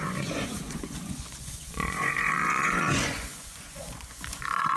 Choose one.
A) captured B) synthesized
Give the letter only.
B